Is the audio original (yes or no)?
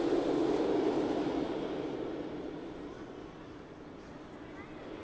yes